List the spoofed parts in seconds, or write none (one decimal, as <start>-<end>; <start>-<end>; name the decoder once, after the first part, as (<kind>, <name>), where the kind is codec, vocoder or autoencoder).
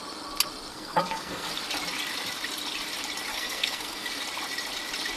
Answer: 0.7-1.5 (codec, SNAC); 3.3-4.2